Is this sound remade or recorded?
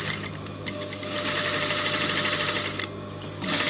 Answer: recorded